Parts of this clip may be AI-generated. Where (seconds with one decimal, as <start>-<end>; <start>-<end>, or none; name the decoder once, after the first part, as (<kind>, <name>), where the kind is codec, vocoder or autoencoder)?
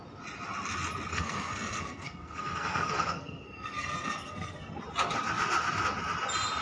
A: 1.1-4.8 (codec, SNAC)